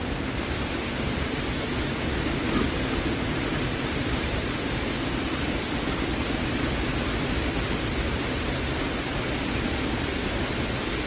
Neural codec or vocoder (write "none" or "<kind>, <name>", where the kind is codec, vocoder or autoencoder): none